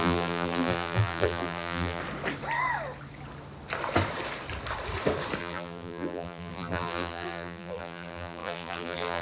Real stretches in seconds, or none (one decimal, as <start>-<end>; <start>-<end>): 2.0-5.4

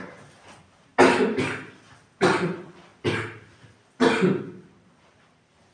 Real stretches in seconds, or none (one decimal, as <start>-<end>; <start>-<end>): 0.9-2.4